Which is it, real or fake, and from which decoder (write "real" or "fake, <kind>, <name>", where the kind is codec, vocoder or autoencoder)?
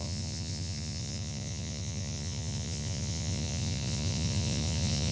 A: fake, vocoder, Vocos